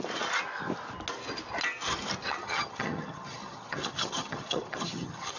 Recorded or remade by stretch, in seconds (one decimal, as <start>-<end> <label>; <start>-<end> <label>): 0.0-2.3 recorded; 2.3-5.4 remade